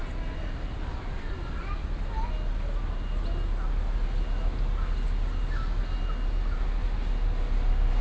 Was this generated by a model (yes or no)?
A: no